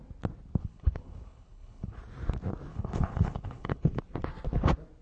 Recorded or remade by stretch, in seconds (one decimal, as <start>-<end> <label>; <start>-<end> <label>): 0.0-0.6 recorded; 0.6-2.0 remade; 2.0-2.7 recorded; 2.7-4.0 remade; 4.0-5.0 recorded